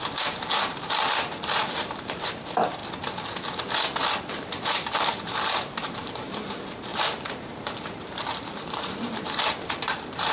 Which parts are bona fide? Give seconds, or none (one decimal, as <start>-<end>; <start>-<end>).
2.8-4.3